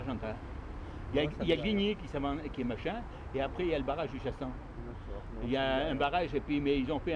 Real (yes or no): yes